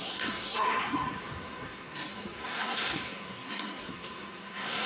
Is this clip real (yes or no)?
no